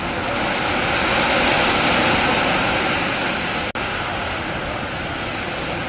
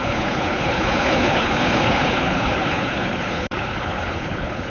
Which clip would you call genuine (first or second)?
first